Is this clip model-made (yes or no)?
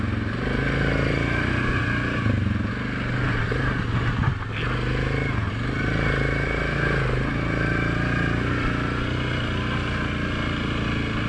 no